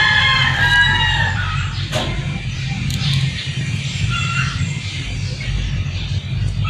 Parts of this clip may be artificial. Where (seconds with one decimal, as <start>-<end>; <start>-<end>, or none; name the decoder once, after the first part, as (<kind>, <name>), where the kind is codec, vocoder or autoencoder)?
0.4-4.4 (vocoder, BigVGAN v2)